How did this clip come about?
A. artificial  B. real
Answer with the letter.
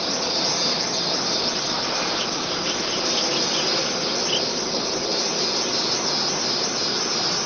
B